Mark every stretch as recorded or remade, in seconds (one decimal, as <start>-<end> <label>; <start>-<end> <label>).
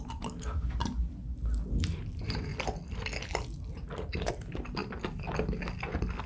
0.0-6.3 recorded